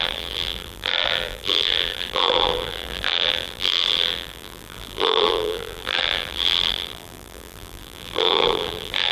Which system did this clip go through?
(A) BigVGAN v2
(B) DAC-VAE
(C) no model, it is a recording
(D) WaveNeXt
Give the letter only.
A